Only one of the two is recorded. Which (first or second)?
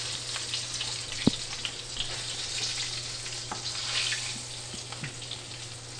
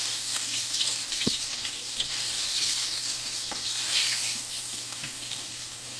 first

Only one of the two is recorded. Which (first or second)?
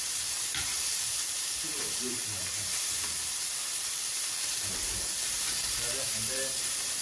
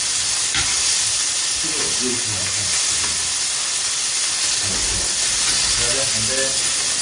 second